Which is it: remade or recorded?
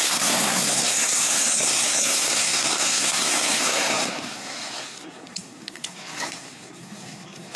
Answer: remade